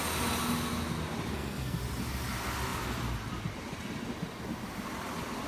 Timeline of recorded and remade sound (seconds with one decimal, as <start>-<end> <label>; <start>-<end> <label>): 0.0-1.3 recorded; 1.3-1.8 remade; 1.8-5.5 recorded

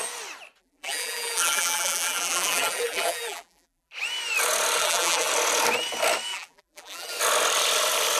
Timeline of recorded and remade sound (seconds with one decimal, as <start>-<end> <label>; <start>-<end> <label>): 0.0-0.6 recorded; 0.6-3.9 remade; 3.9-4.8 recorded; 4.8-5.3 remade; 5.3-6.3 recorded; 6.3-7.1 remade; 7.1-8.2 recorded

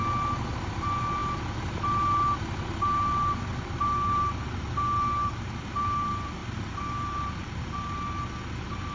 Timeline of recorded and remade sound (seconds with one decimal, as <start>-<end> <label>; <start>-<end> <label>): 0.0-8.9 recorded